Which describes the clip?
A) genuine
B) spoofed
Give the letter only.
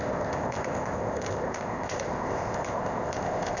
B